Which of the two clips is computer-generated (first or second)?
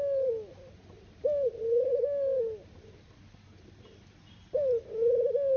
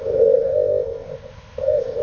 second